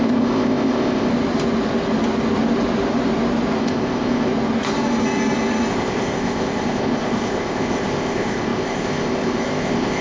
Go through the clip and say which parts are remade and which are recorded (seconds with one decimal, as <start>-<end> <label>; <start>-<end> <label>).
0.0-1.1 remade; 1.1-3.6 recorded; 3.6-4.3 remade; 4.3-5.7 recorded; 5.7-10.0 remade